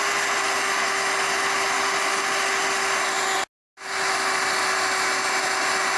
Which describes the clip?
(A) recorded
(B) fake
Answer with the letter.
A